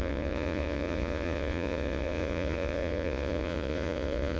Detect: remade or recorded remade